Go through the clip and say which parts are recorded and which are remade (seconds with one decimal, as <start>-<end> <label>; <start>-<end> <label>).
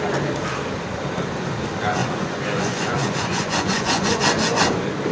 0.0-2.0 recorded; 2.0-4.6 remade; 4.6-5.1 recorded